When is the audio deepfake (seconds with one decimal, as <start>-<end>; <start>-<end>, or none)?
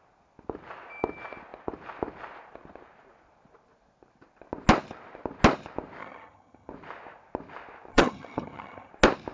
6.0-6.7; 7.9-8.9